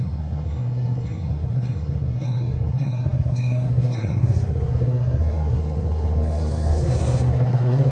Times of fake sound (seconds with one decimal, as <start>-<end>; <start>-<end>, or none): 0.0-7.9